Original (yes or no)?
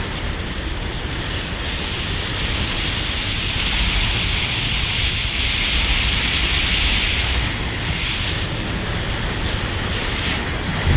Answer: yes